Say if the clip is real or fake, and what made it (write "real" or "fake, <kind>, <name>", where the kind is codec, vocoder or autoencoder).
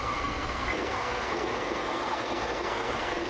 fake, codec, SNAC